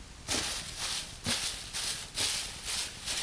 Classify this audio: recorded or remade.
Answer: recorded